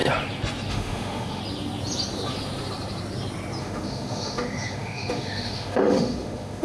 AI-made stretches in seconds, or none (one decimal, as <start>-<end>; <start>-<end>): 0.7-1.4; 3.6-6.6